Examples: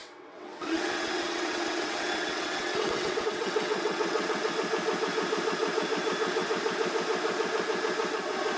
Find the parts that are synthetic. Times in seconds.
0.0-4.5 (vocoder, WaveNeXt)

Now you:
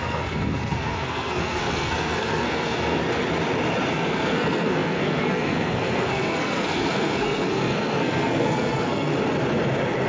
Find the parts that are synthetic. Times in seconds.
0.0-3.0 (codec, SNAC); 3.9-9.1

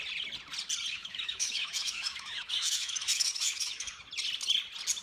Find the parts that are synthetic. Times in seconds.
0.9-3.9 (autoencoder, DAC-VAE)

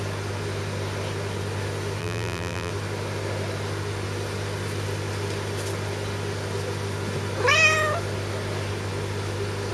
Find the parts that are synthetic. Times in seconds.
2.0-2.7 (vocoder, BigVGAN v2)